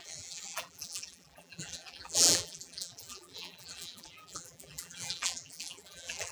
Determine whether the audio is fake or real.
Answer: fake